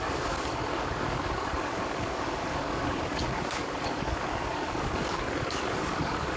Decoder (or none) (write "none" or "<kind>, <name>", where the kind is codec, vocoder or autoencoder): codec, DAC